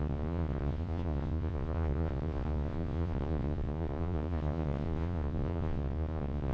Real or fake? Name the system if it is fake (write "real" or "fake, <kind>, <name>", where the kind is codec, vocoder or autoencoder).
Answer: fake, vocoder, Vocos